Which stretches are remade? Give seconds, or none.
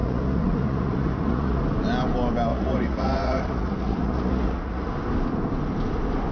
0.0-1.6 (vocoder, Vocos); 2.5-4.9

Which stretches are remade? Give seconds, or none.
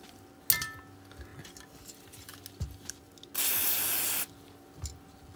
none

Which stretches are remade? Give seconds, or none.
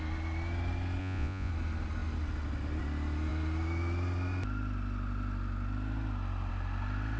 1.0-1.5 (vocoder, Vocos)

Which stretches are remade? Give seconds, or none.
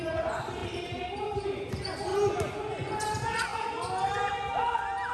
none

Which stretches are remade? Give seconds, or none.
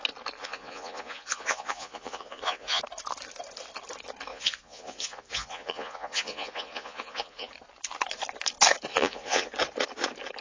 0.4-2.8 (vocoder, Vocos); 4.3-7.5; 8.9-9.5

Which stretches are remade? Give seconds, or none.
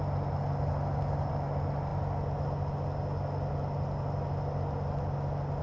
none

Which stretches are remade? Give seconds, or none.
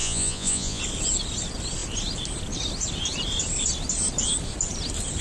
0.0-0.8 (vocoder, Vocos)